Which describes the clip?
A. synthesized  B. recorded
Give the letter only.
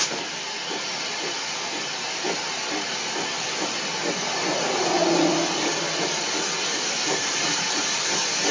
B